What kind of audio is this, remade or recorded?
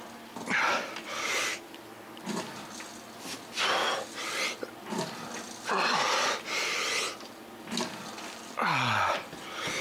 recorded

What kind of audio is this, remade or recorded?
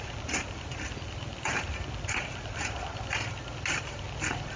recorded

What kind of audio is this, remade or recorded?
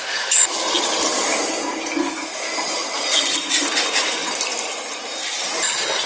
recorded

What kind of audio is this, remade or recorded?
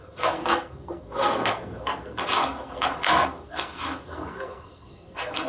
remade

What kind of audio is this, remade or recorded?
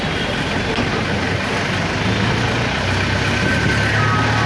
recorded